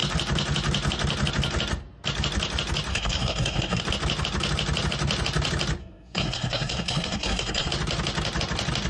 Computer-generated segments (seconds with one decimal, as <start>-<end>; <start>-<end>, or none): 2.9-3.8; 5.8-7.7